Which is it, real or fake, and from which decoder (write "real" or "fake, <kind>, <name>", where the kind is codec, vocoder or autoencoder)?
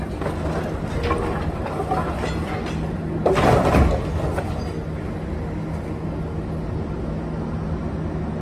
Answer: real